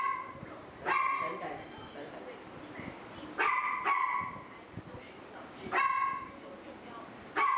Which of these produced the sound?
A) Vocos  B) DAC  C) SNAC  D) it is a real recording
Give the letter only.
D